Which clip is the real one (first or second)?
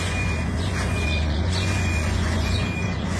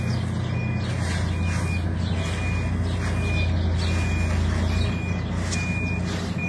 second